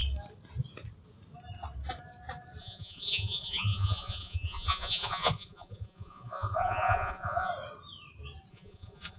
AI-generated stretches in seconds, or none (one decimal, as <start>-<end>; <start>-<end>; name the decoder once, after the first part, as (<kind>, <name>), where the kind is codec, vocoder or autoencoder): 2.6-7.5 (vocoder, Vocos); 8.5-9.2